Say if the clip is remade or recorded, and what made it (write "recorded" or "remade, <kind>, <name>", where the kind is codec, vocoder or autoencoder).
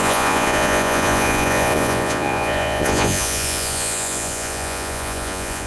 remade, vocoder, Vocos